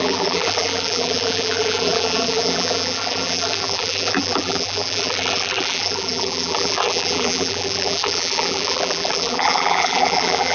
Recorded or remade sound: remade